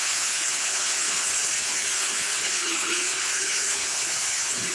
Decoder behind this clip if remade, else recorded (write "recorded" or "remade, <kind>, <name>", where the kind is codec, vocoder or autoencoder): remade, codec, HILCodec